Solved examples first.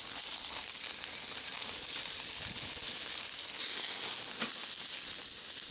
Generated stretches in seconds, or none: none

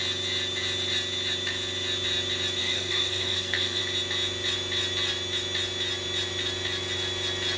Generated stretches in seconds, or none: 2.6-3.8 (codec, SNAC)

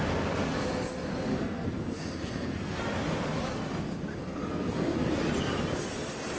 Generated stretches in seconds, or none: 1.3-2.8 (codec, SNAC); 4.1-5.1